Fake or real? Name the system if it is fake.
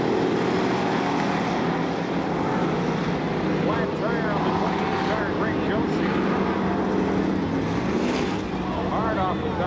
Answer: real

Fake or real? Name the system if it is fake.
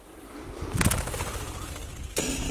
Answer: real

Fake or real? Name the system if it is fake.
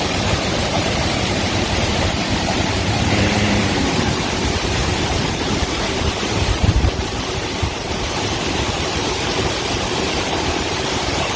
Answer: fake, vocoder, BigVGAN v2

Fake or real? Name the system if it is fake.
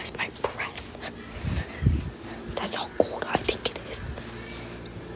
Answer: real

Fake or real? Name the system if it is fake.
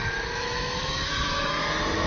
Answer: fake, autoencoder, DAC-VAE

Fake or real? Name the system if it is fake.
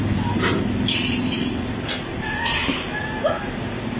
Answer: real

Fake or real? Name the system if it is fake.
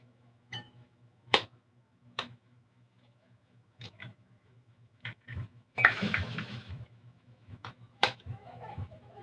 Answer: fake, autoencoder, DAC-VAE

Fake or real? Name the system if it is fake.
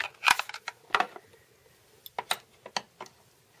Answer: real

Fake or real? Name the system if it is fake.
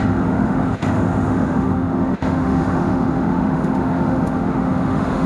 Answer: fake, autoencoder, DAC-VAE